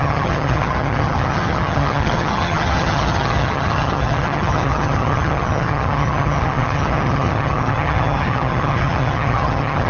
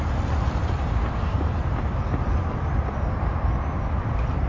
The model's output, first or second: first